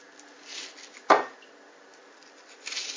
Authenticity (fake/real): fake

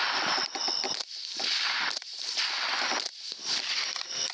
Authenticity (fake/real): fake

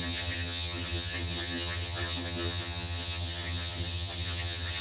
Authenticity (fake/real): fake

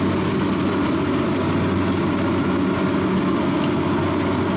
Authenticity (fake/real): real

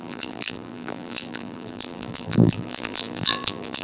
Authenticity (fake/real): fake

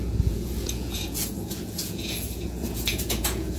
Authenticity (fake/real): fake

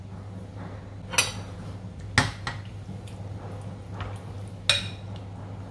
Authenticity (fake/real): real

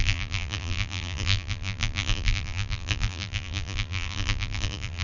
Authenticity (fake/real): fake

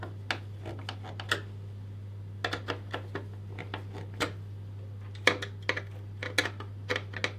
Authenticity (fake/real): real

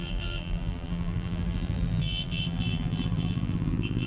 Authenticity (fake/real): fake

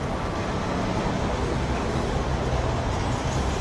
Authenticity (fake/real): real